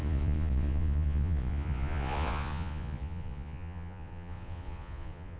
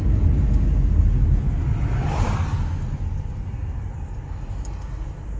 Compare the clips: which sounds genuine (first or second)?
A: second